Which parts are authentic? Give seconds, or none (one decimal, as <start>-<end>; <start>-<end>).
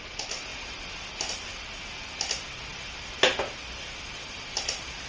0.0-5.1